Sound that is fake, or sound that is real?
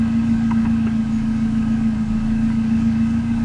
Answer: fake